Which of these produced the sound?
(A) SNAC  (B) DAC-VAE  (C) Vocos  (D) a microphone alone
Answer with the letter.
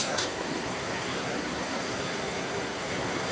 A